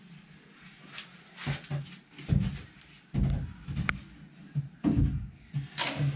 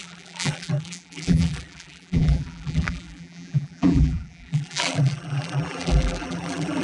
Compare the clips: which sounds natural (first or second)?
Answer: first